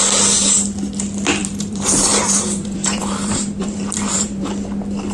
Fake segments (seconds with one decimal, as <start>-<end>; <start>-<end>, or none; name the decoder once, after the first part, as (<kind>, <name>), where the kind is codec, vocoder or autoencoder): 1.4-4.5 (vocoder, BigVGAN v2)